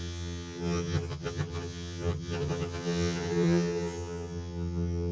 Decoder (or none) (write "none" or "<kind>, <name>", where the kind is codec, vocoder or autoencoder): vocoder, HiFi-GAN